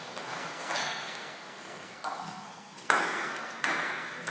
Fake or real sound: fake